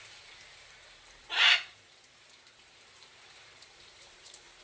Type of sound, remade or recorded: remade